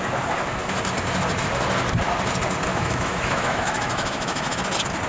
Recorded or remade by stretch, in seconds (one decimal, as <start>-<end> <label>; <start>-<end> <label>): 0.0-2.7 recorded; 2.7-4.6 remade; 4.6-5.1 recorded